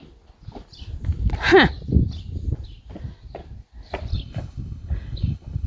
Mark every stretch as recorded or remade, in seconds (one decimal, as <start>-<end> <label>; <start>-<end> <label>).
0.0-4.1 recorded; 4.1-5.7 remade